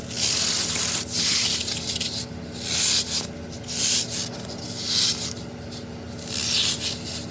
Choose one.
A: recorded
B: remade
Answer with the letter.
A